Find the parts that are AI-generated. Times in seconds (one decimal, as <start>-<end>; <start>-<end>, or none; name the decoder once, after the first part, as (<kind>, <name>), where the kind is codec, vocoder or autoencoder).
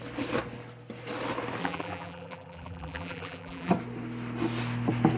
1.6-3.7 (vocoder, BigVGAN v2)